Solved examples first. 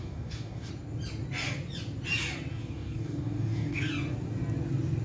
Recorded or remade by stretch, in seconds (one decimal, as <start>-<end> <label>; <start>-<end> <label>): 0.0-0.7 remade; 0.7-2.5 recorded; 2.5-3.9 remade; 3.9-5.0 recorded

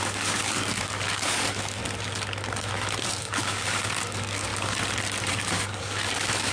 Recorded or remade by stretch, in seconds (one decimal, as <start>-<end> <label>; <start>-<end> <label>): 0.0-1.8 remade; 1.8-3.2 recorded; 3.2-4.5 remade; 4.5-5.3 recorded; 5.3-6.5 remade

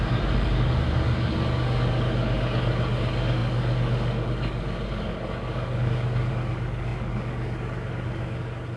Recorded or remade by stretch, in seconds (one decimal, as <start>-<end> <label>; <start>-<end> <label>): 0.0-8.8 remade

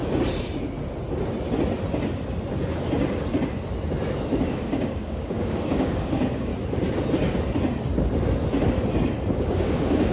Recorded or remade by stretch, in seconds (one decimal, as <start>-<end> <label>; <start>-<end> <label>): 0.0-4.5 recorded; 4.5-6.5 remade; 6.5-9.4 recorded; 9.4-10.1 remade

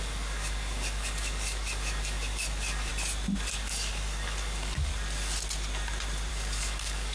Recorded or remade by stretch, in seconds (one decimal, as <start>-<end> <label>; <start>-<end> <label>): 0.0-2.9 remade; 2.9-3.5 recorded; 3.5-4.9 remade; 4.9-6.3 recorded; 6.3-7.1 remade